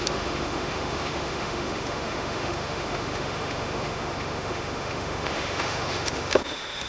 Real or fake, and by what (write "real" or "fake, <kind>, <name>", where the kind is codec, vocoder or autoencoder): fake, autoencoder, DAC-VAE